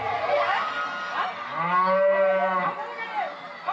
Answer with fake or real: real